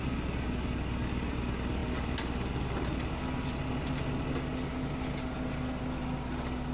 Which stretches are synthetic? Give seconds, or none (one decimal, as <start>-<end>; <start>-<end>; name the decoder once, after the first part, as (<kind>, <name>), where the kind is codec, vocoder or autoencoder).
none